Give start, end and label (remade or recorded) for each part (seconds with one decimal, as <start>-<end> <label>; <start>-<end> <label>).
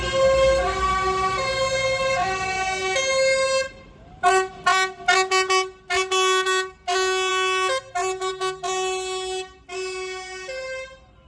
0.0-11.3 recorded